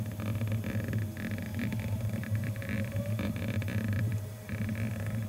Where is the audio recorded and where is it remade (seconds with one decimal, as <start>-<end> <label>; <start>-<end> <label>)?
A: 0.0-1.5 recorded; 1.5-4.7 remade; 4.7-5.3 recorded